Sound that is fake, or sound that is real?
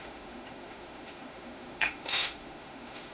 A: fake